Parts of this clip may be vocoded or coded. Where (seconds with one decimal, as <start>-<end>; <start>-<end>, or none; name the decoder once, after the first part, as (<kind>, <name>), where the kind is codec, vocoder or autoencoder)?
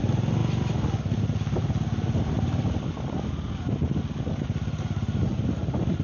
none